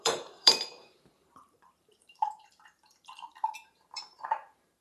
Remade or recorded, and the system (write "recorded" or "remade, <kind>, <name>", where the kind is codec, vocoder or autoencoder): remade, vocoder, BigVGAN v2